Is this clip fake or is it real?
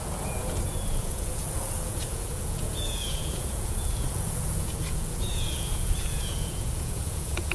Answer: fake